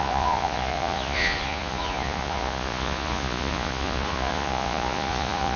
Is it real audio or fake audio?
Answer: fake